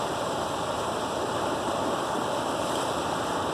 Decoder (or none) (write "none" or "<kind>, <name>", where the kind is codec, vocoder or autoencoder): none